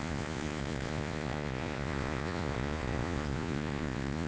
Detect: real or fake fake